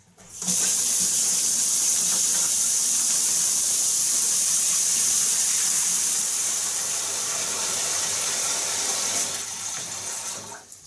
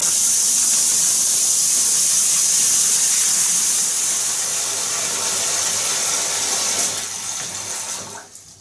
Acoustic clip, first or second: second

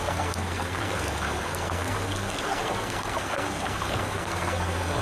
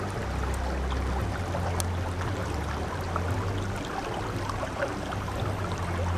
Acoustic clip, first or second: second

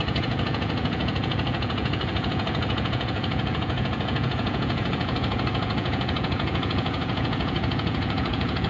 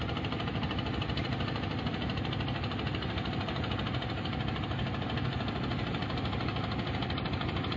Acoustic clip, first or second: second